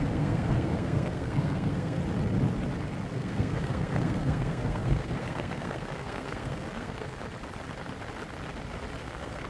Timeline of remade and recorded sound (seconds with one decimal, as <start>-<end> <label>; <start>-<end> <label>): 0.0-2.0 remade; 2.0-3.1 recorded; 3.1-7.2 remade; 7.2-9.0 recorded; 9.0-9.5 remade

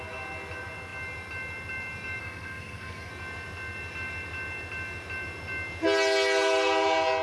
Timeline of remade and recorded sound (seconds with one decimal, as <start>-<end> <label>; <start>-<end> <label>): 0.0-2.2 recorded; 2.2-3.1 remade; 3.1-7.2 recorded

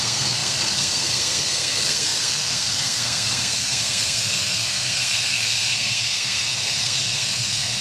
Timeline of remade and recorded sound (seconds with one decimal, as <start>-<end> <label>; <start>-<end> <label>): 0.0-7.8 remade

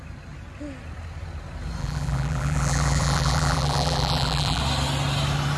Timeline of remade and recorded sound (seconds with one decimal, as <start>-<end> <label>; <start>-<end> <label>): 0.0-1.8 recorded; 1.8-4.6 remade; 4.6-5.6 recorded

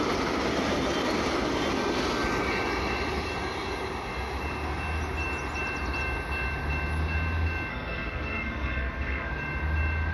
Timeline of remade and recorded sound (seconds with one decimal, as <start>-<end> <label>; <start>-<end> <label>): 0.0-7.7 recorded; 7.7-9.3 remade; 9.3-10.1 recorded